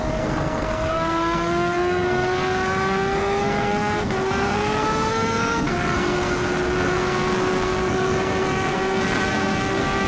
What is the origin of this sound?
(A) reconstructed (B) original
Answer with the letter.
A